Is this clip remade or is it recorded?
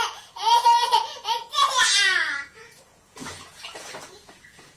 remade